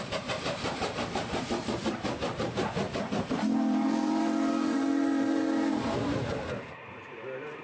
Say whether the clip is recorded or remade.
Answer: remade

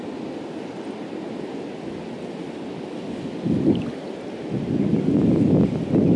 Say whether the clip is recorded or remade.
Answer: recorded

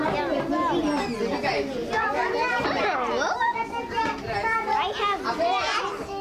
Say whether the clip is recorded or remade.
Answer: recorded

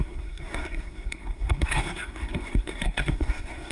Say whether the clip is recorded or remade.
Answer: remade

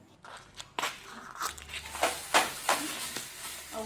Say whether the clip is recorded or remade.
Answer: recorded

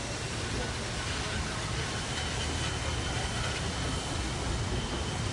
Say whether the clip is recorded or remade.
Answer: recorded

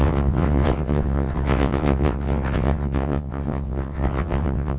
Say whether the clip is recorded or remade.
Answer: remade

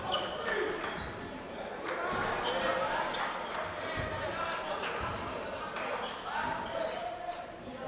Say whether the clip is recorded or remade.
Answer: remade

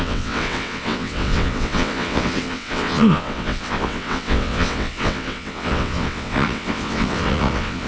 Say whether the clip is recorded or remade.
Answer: remade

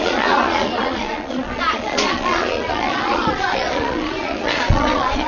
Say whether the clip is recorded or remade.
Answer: remade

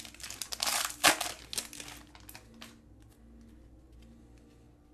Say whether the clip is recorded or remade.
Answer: recorded